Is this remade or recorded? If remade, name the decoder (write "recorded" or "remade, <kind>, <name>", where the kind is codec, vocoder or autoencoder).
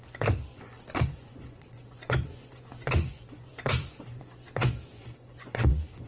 remade, vocoder, Vocos